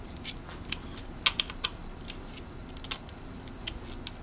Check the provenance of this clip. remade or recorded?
recorded